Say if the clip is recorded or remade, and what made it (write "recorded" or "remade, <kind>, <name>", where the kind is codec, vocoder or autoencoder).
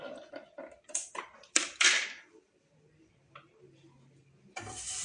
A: remade, vocoder, BigVGAN v2